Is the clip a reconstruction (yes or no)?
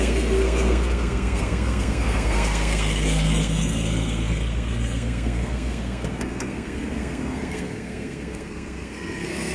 yes